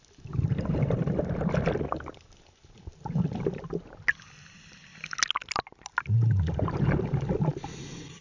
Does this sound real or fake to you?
real